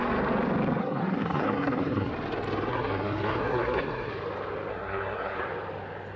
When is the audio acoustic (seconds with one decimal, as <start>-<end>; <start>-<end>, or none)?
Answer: 0.0-0.8; 2.1-2.7; 4.1-4.7; 5.4-6.2